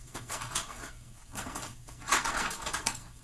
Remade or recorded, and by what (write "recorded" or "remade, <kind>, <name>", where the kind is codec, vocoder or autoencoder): remade, codec, SNAC